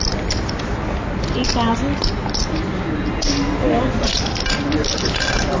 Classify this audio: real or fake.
real